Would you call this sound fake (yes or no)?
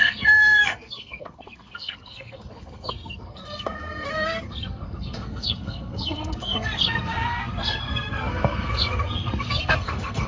yes